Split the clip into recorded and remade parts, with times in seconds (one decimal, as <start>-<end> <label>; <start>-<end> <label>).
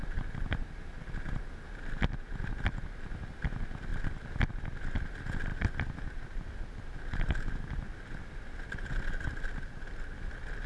0.0-10.7 recorded